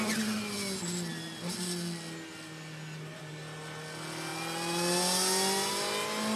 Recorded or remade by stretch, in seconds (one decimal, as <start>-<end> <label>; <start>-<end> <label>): 0.0-6.4 recorded